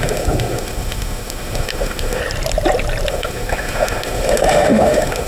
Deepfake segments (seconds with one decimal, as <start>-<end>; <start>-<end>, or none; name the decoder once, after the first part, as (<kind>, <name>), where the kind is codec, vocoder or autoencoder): 0.0-2.2 (autoencoder, DAC-VAE); 3.1-5.3